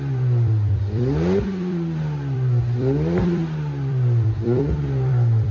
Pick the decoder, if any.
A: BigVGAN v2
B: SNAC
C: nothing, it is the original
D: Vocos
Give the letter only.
A